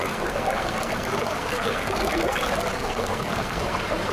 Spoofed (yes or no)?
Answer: yes